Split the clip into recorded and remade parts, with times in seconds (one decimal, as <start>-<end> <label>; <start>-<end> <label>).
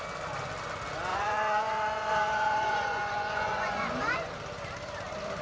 0.0-1.1 recorded; 1.1-4.3 remade; 4.3-5.4 recorded